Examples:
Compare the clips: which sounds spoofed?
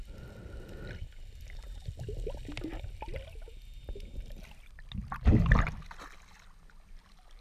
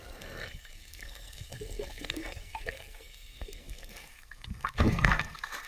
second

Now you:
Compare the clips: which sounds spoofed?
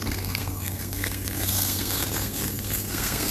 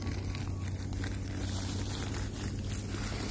first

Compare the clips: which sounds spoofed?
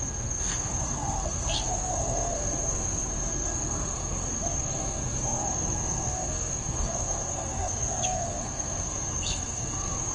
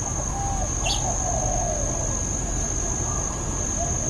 first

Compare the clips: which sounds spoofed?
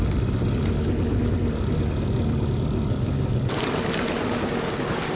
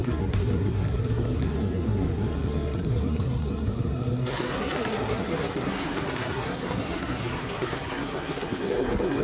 second